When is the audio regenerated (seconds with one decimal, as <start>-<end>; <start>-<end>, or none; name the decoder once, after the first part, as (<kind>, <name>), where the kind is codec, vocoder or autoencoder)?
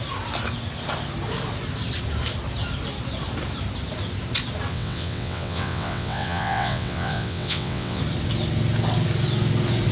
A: 4.7-8.0 (vocoder, WaveNeXt)